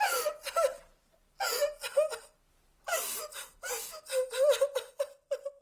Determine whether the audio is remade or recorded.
recorded